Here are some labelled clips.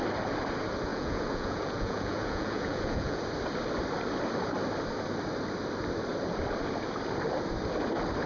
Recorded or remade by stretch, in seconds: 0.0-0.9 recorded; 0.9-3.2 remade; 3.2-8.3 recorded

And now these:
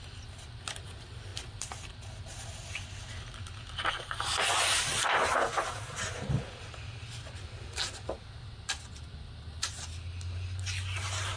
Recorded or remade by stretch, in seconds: 0.0-11.4 recorded

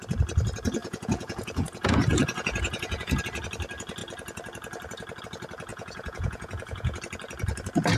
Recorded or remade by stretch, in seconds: 0.0-0.8 recorded; 0.8-3.2 remade; 3.2-5.7 recorded; 5.7-7.0 remade; 7.0-8.0 recorded

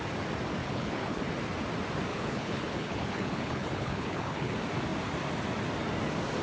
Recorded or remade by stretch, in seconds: 0.0-0.6 recorded; 0.6-1.2 remade; 1.2-2.1 recorded; 2.1-4.5 remade; 4.5-6.4 recorded